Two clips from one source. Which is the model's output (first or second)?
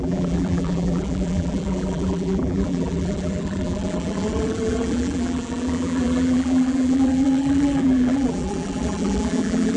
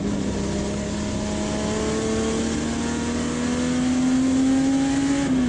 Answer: first